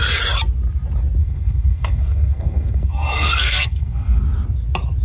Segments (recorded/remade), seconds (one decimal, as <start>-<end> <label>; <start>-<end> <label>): 0.0-1.2 recorded; 1.2-4.2 remade; 4.2-5.0 recorded